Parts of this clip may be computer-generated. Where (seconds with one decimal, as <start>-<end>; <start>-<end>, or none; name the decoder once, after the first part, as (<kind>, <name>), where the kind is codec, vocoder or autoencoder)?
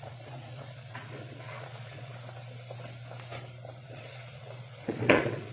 0.0-2.1 (vocoder, Vocos); 3.8-5.5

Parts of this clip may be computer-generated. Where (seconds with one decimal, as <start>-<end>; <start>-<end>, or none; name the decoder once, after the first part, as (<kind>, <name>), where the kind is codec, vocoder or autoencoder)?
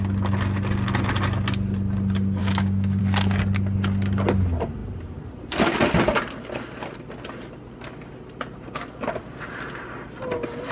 2.4-3.0 (codec, DAC)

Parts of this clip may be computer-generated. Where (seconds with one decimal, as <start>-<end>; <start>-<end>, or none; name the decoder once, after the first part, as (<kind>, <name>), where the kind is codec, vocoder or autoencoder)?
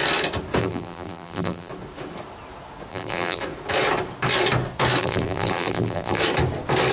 0.6-1.7 (vocoder, BigVGAN v2); 2.9-3.4; 5.0-6.2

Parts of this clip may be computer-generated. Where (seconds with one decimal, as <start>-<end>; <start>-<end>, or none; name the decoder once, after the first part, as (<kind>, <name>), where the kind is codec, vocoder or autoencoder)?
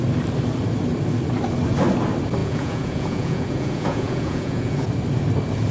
2.4-4.9 (vocoder, Vocos)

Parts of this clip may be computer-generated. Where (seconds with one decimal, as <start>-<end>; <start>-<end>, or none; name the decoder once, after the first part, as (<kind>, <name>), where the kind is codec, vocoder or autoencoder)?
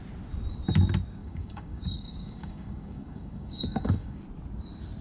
1.2-4.2 (codec, DAC)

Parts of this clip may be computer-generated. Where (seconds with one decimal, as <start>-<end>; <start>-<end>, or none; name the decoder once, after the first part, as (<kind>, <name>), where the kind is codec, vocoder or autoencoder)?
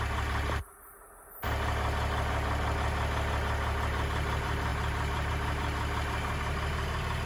4.7-5.3 (vocoder, BigVGAN v2)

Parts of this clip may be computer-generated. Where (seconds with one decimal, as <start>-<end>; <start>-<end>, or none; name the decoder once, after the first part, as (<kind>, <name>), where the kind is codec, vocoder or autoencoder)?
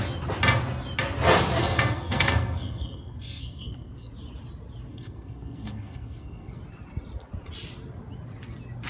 1.6-4.1 (codec, SNAC); 4.9-6.6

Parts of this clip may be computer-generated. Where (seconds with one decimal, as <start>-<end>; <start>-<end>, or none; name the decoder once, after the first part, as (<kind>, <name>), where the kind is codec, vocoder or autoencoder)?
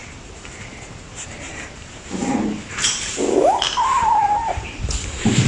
0.0-2.2 (vocoder, BigVGAN v2); 4.0-4.9